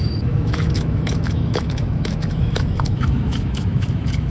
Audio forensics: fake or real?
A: fake